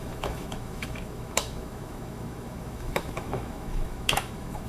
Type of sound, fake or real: fake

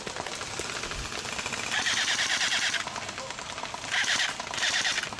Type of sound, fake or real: real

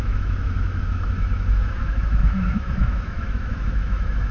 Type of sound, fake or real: fake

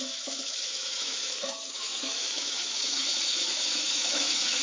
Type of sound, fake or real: fake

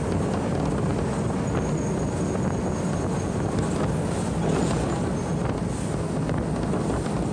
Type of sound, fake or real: real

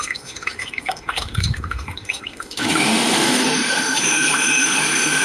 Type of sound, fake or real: fake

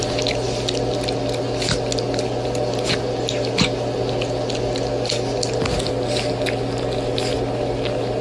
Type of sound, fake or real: real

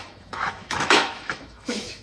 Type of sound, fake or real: fake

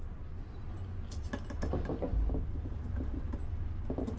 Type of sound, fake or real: real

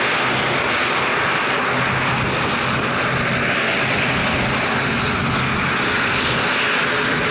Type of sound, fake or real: real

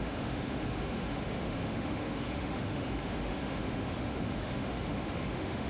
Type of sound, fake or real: fake